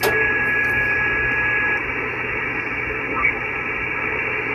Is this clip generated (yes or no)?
no